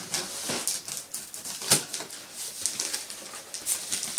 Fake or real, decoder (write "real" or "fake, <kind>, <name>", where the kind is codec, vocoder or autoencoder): real